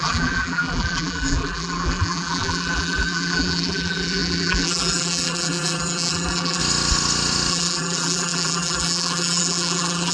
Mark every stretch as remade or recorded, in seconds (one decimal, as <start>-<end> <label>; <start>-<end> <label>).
0.0-6.6 remade; 6.6-7.5 recorded; 7.5-10.1 remade